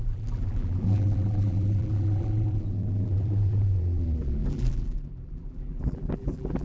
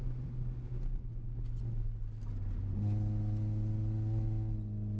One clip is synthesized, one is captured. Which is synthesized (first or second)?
first